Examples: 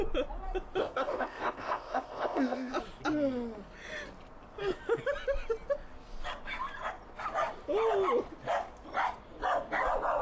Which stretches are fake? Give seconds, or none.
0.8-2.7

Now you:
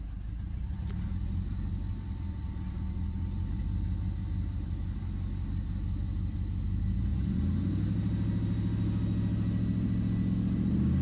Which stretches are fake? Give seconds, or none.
none

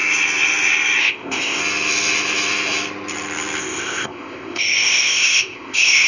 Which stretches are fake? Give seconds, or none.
1.0-1.6; 3.6-6.1